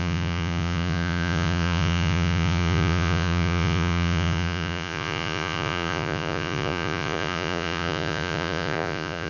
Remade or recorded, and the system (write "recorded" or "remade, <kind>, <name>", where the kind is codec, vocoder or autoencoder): remade, vocoder, Vocos